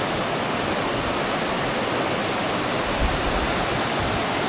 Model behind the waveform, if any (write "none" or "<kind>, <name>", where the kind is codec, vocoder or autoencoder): none